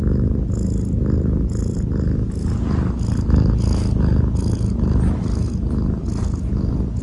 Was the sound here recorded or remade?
recorded